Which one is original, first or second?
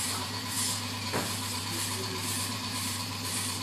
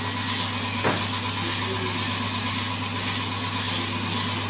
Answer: second